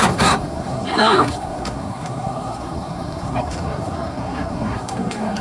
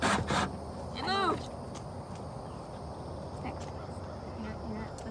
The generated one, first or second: first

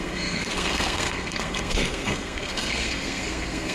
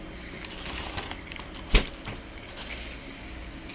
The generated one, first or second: first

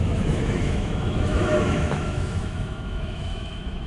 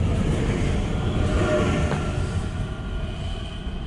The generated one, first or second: first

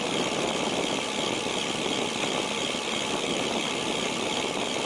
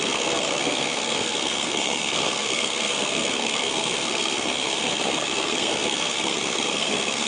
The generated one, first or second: second